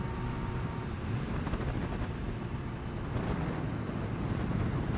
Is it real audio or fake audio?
real